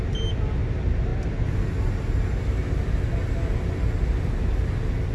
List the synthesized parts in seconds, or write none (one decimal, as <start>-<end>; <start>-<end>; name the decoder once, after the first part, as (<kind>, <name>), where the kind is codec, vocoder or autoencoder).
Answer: none